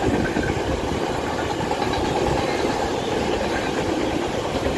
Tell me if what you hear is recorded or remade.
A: remade